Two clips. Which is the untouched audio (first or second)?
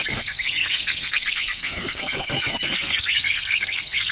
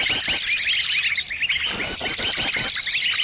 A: second